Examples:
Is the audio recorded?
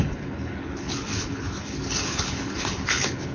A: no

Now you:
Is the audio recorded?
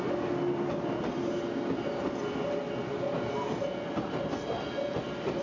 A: yes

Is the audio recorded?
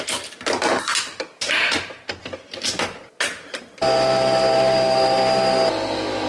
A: yes